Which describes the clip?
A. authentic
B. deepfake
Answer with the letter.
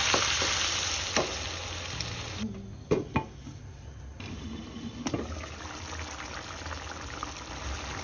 A